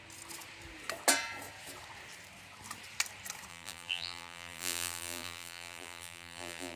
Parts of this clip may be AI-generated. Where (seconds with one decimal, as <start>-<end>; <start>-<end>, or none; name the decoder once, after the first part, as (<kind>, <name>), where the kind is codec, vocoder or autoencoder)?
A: 3.5-6.8 (vocoder, BigVGAN v2)